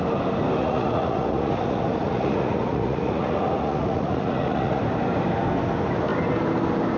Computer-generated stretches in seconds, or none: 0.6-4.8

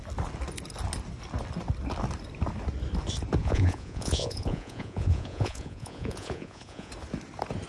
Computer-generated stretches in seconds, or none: 3.4-6.9

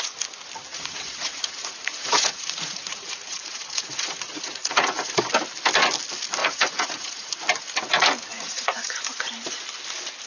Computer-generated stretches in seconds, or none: 0.7-5.2; 6.4-7.3; 8.3-9.3

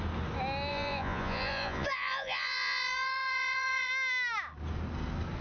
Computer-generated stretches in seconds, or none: 0.7-3.9

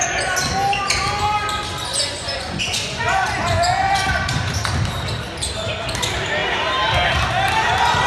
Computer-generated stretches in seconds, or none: 1.9-4.6

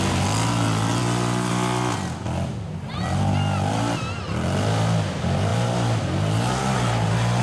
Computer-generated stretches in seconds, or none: none

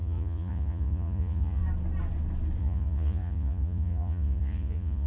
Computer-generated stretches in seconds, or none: 0.0-1.6; 2.6-5.1

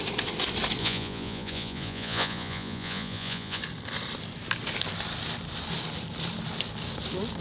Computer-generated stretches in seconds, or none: 0.8-3.6